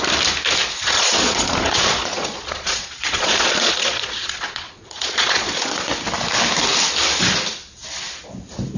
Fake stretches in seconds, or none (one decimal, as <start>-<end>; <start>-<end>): 0.8-5.9